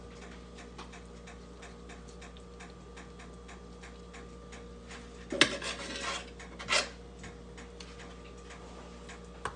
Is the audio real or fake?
real